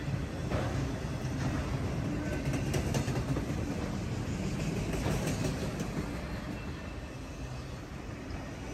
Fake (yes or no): no